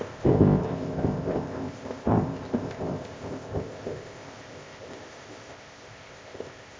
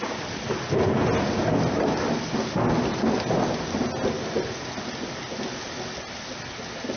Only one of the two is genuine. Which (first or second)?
second